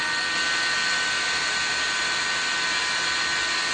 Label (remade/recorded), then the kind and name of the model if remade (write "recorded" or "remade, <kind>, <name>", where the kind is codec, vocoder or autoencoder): recorded